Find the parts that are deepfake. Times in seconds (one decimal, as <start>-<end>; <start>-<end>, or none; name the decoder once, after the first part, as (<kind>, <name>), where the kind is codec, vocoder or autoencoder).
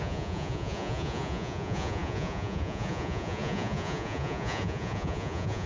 0.0-5.7 (vocoder, Vocos)